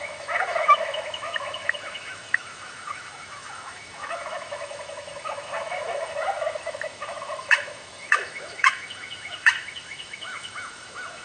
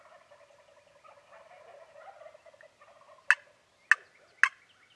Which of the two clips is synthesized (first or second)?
first